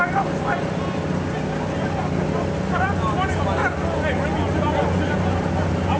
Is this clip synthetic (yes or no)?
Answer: no